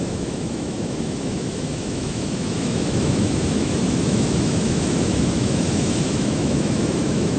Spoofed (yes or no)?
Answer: yes